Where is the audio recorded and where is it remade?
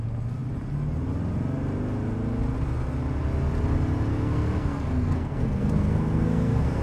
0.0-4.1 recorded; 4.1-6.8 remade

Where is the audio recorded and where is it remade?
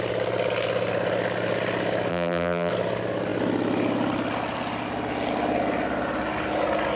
0.0-2.1 recorded; 2.1-2.7 remade; 2.7-7.0 recorded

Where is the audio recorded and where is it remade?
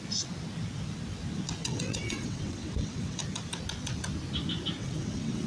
0.0-1.6 recorded; 1.6-3.2 remade; 3.2-4.8 recorded; 4.8-5.5 remade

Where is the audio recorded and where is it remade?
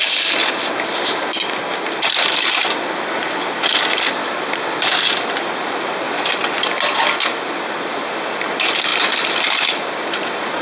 0.0-10.6 recorded